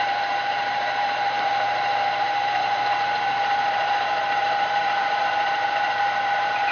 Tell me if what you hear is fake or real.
fake